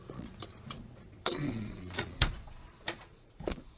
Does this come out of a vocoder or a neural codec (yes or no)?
yes